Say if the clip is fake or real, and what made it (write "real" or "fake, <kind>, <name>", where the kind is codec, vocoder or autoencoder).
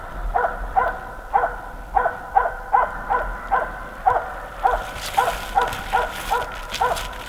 real